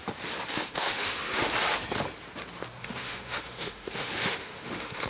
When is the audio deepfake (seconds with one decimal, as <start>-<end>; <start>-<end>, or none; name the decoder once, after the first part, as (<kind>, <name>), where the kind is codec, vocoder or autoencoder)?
0.5-1.5 (autoencoder, DAC-VAE); 2.8-5.1